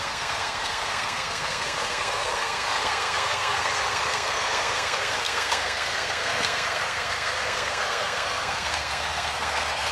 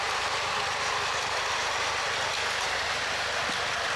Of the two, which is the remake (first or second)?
first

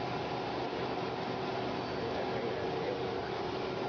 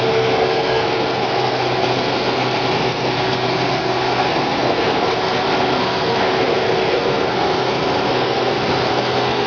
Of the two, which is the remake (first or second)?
second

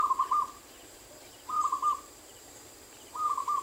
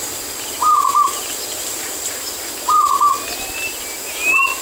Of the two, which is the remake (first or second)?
first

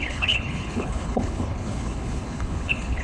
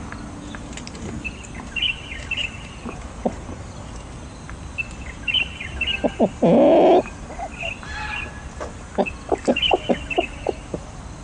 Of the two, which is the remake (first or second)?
first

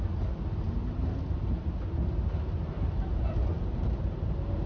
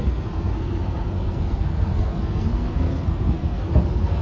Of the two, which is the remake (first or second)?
second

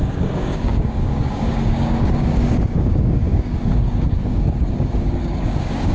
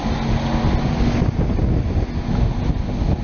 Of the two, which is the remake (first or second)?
first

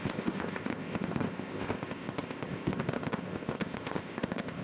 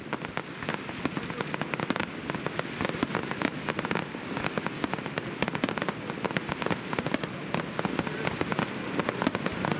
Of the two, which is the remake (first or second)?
first